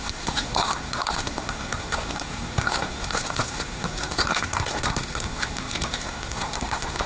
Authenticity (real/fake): fake